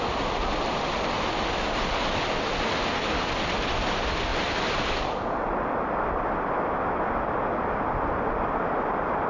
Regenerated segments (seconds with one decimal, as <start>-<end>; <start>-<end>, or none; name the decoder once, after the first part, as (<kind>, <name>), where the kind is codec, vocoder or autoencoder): 4.3-6.2 (vocoder, BigVGAN v2)